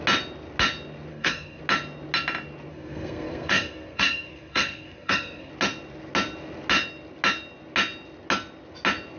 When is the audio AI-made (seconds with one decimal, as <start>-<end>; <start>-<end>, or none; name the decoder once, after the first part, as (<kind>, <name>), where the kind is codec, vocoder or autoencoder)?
1.1-1.6 (codec, SNAC); 2.7-5.5